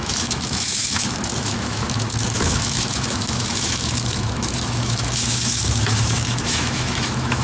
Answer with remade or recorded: remade